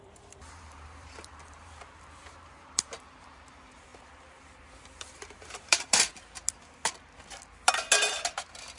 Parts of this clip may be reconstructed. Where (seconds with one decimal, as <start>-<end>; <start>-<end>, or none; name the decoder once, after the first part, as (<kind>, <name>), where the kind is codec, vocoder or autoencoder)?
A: 0.0-6.1 (vocoder, BigVGAN v2); 8.3-8.8